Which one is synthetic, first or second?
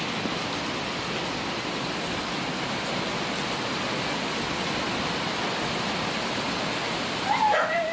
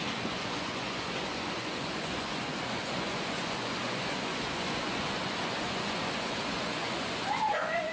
second